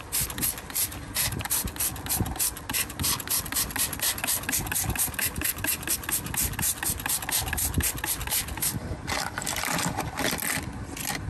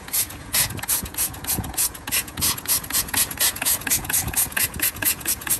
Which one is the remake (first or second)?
second